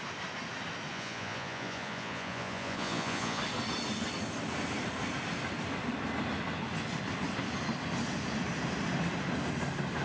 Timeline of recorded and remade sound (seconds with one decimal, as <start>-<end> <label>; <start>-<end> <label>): 0.0-0.9 recorded; 0.9-3.4 remade; 3.4-10.0 recorded